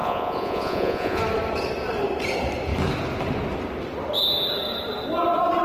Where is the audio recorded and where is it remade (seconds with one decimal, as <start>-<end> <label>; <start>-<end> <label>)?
0.0-1.2 remade; 1.2-5.6 recorded